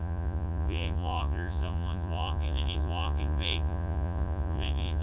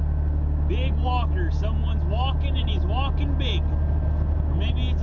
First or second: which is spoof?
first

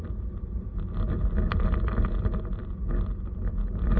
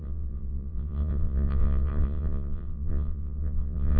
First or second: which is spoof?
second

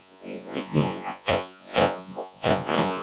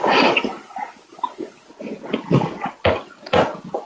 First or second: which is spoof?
first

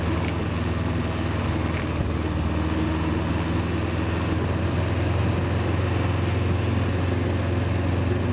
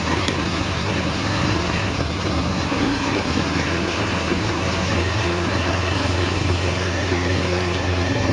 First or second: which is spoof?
second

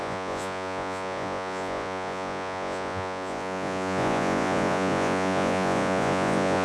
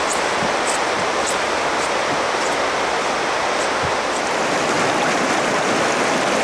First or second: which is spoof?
first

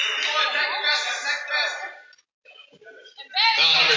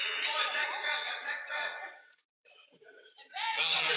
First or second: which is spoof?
second